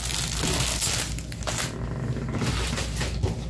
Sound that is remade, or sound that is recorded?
recorded